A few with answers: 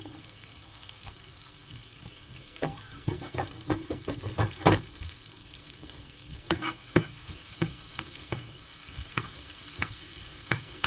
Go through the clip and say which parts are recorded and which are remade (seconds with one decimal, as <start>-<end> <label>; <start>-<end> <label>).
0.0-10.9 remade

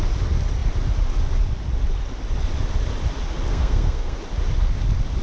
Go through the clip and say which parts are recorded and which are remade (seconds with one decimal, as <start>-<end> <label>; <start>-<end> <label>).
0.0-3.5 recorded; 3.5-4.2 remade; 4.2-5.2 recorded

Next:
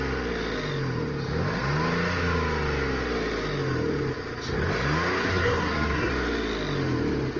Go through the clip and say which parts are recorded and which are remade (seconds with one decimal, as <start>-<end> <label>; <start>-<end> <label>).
0.0-5.2 recorded; 5.2-6.1 remade; 6.1-7.4 recorded